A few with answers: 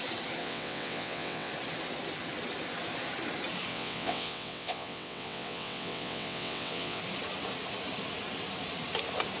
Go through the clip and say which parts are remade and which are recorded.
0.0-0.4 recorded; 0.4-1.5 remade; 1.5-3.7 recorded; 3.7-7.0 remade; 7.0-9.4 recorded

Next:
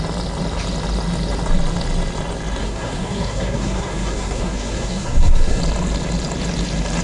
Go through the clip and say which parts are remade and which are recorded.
0.0-2.6 recorded; 2.6-5.6 remade; 5.6-7.0 recorded

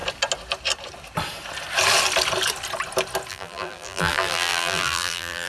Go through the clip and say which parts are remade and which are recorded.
0.0-3.3 recorded; 3.3-5.5 remade

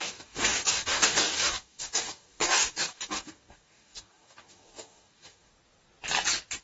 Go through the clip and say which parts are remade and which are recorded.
0.0-5.5 remade; 5.5-6.6 recorded